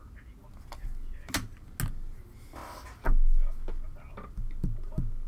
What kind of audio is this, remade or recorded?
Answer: recorded